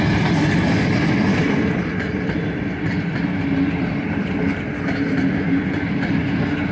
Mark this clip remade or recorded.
recorded